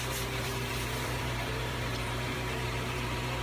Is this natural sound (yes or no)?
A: no